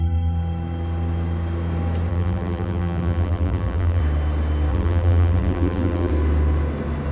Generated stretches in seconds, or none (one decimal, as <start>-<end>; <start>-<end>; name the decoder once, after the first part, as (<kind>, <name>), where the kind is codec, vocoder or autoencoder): 2.1-4.0 (vocoder, BigVGAN v2); 4.7-6.1